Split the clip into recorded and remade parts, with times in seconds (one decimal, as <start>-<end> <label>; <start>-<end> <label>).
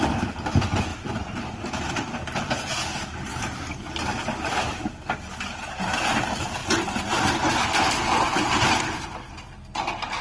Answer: 0.0-3.3 recorded; 3.3-3.9 remade; 3.9-10.2 recorded